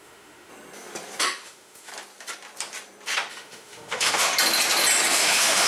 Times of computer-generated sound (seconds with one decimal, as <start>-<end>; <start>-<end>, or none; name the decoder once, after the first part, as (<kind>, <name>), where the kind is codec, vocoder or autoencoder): 0.0-0.5 (autoencoder, DAC-VAE); 1.2-1.9; 3.3-4.3; 5.1-5.7